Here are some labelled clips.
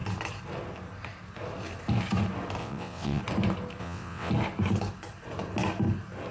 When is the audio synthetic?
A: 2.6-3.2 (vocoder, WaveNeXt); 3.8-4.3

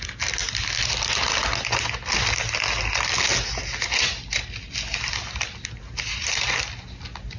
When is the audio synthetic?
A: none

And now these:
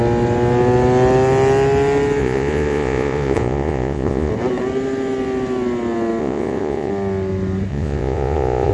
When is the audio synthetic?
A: 2.2-4.3 (vocoder, Vocos); 6.2-6.9; 7.7-8.7

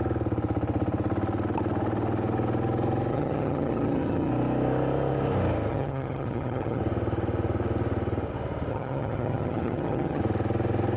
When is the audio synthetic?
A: 3.1-4.3 (vocoder, HiFi-GAN); 5.7-6.8; 8.7-10.2

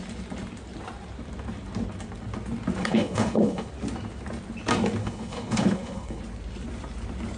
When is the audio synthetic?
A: 2.8-3.7 (codec, HILCodec); 5.0-6.2